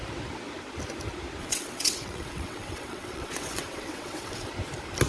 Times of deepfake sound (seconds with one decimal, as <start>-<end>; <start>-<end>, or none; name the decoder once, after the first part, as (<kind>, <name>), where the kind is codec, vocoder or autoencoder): 1.4-4.5 (vocoder, WaveNeXt)